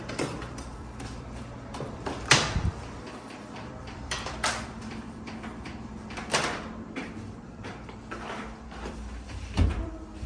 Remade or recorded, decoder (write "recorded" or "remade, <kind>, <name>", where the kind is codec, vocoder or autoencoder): remade, vocoder, BigVGAN v2